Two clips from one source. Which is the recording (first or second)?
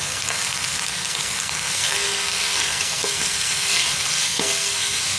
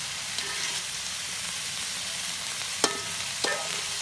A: second